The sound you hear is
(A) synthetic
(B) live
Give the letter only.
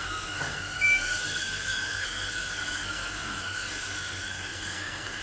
A